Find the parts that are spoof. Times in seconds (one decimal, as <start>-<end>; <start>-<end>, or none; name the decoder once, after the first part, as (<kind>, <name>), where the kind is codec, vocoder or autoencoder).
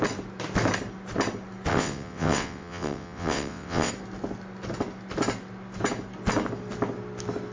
1.7-3.9 (vocoder, WaveNeXt)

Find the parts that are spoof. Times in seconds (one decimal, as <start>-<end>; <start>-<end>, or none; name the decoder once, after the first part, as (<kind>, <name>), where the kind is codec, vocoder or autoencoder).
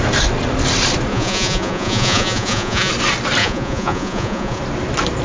1.1-2.9 (vocoder, Vocos); 3.4-4.6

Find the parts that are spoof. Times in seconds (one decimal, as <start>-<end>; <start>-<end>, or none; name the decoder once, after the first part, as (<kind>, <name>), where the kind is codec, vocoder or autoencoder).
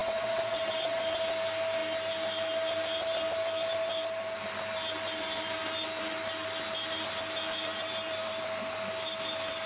0.0-1.0 (vocoder, WaveNeXt)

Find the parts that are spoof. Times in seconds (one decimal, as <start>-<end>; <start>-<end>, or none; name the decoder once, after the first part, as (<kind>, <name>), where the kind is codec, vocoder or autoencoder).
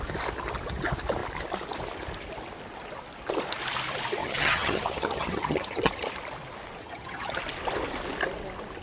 4.2-5.9 (vocoder, HiFi-GAN); 6.8-7.4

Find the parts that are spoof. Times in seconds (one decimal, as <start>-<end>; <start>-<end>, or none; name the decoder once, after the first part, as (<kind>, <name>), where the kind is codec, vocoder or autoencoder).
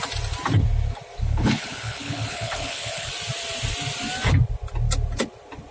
1.2-3.1 (codec, HILCodec)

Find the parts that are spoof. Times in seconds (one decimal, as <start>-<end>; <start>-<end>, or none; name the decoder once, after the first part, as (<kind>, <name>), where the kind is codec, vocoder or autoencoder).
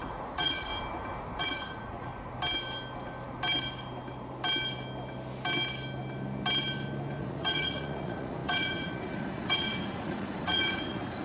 0.0-0.7 (vocoder, Vocos); 1.4-2.1; 7.2-11.2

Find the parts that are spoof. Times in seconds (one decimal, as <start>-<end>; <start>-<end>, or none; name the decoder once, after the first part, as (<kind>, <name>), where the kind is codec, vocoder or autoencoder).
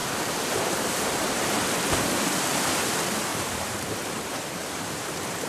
0.0-1.6 (vocoder, BigVGAN v2); 3.3-5.5